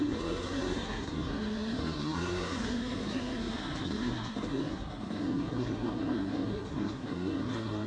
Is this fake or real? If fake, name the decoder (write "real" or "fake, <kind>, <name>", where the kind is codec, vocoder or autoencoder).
fake, codec, SNAC